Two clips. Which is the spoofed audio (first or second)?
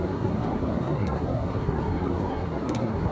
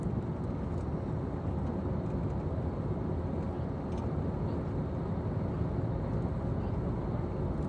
first